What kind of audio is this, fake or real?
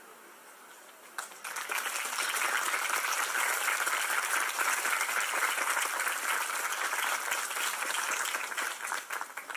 real